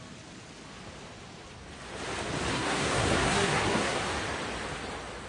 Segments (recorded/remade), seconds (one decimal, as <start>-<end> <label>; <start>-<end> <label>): 0.0-2.5 recorded; 2.5-4.0 remade; 4.0-5.3 recorded